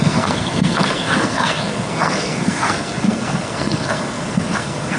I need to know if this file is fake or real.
fake